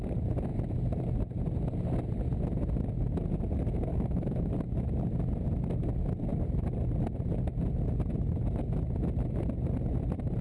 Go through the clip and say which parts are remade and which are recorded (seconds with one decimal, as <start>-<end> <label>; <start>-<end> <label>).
0.0-3.9 recorded; 3.9-4.5 remade; 4.5-10.4 recorded